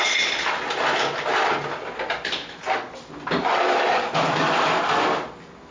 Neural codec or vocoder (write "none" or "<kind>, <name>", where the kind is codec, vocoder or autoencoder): none